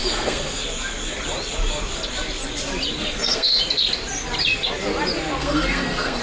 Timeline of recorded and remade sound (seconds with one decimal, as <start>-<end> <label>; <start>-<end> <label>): 0.0-0.6 remade; 0.6-3.0 recorded; 3.0-3.6 remade; 3.6-5.4 recorded; 5.4-6.2 remade